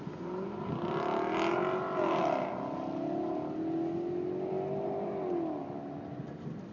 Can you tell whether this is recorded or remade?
recorded